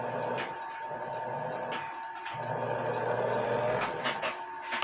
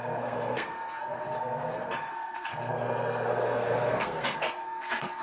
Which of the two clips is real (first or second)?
first